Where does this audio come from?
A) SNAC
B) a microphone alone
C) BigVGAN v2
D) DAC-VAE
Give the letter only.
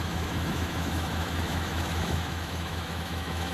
D